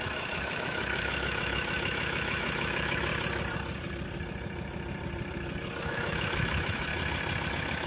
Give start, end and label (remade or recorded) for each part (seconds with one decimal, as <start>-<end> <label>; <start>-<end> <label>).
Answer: 0.0-3.1 remade; 3.1-5.8 recorded; 5.8-6.9 remade; 6.9-7.5 recorded; 7.5-7.9 remade